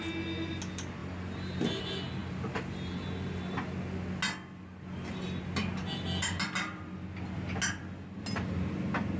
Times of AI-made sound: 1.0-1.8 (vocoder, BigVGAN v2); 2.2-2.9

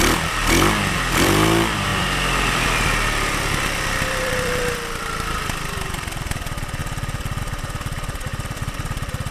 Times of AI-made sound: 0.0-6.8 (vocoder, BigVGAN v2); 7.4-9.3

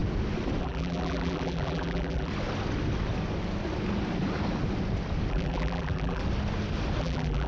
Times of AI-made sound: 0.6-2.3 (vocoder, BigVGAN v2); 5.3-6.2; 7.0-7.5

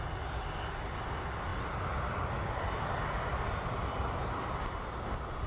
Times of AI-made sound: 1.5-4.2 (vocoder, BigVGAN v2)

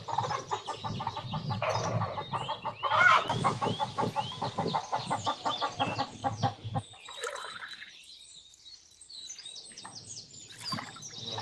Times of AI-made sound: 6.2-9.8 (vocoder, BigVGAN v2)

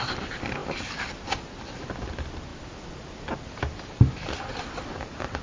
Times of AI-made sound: 0.0-0.6 (vocoder, BigVGAN v2); 1.8-2.5; 3.6-5.4

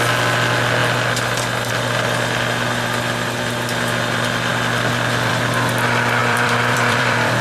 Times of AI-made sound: 6.2-7.4 (vocoder, BigVGAN v2)

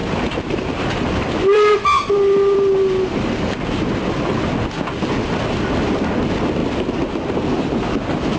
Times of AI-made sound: 0.0-4.5 (vocoder, BigVGAN v2)